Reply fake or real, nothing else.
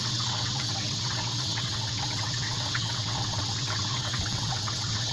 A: fake